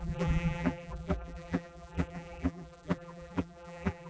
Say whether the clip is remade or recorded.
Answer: remade